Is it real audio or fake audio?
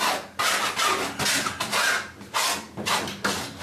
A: real